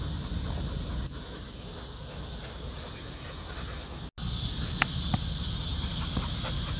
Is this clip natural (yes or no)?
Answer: yes